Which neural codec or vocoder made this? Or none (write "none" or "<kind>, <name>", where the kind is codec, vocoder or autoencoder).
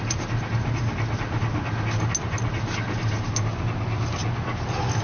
none